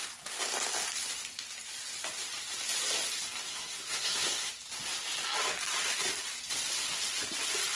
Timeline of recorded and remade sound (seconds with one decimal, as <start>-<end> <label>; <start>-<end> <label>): 0.0-3.5 recorded; 3.5-4.5 remade; 4.5-7.8 recorded